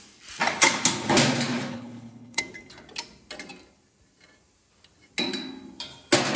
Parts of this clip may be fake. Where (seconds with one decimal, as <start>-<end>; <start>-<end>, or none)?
1.7-2.4